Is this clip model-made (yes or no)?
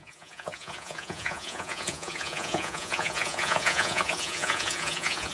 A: yes